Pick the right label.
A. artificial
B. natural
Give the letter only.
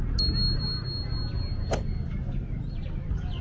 B